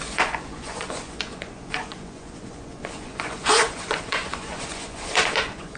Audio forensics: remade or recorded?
remade